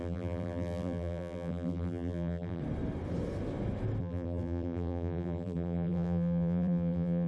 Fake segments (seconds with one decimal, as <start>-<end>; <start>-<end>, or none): 0.0-2.6; 4.0-7.3